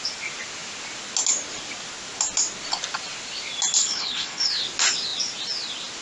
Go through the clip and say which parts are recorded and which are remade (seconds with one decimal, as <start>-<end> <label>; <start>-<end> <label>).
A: 0.0-3.8 recorded; 3.8-4.5 remade; 4.5-6.0 recorded

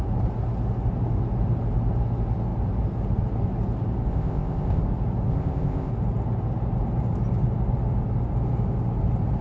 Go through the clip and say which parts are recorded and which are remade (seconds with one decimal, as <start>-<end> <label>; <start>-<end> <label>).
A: 0.0-4.1 recorded; 4.1-4.8 remade; 4.8-5.3 recorded; 5.3-5.9 remade; 5.9-9.4 recorded

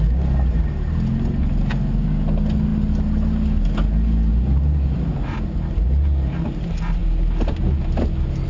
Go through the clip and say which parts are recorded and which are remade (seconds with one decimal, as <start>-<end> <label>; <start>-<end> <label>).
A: 0.0-8.5 recorded

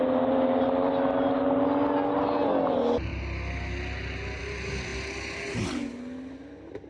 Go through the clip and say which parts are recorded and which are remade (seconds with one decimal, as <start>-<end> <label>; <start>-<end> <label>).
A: 0.0-6.9 recorded

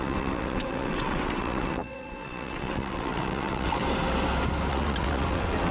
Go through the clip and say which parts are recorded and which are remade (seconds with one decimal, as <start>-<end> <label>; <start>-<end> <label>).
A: 0.0-3.8 remade; 3.8-4.7 recorded; 4.7-5.7 remade

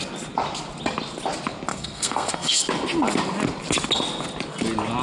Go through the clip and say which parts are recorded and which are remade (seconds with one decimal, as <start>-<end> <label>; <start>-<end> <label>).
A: 0.0-1.7 recorded; 1.7-2.6 remade; 2.6-5.0 recorded